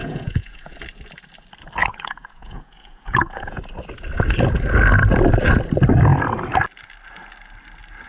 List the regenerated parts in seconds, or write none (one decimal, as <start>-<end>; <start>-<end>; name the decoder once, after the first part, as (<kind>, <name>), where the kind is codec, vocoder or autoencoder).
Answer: 0.0-0.7 (vocoder, Vocos); 1.8-3.6